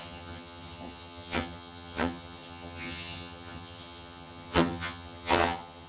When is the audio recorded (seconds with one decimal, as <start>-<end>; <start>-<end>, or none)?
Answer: none